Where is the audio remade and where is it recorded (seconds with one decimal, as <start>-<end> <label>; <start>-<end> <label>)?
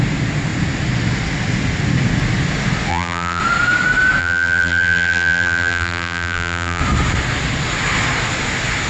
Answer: 0.0-2.9 recorded; 2.9-3.4 remade; 3.4-4.2 recorded; 4.2-6.8 remade; 6.8-8.9 recorded